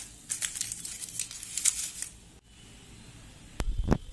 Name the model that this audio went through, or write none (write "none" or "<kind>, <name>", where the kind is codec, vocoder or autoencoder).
none